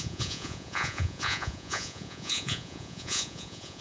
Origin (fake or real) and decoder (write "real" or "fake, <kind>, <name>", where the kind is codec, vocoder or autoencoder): fake, vocoder, Vocos